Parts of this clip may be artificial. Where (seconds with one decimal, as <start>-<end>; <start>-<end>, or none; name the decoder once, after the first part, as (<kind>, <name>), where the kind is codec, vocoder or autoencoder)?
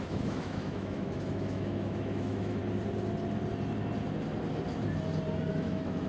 0.0-2.6 (autoencoder, DAC-VAE); 5.5-6.1